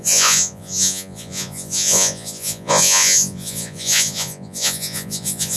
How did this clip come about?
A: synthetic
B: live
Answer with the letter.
A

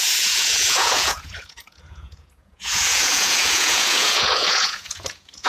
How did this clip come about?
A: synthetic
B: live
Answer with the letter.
A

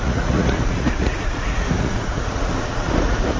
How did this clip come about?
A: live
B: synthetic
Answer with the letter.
B